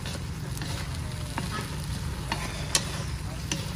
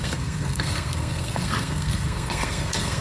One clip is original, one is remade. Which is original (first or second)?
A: first